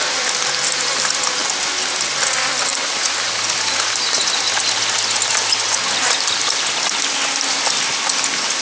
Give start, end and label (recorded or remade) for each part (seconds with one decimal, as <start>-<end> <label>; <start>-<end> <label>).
0.0-8.6 recorded